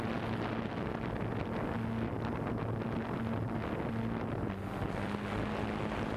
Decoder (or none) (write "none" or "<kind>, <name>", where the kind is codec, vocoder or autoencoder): none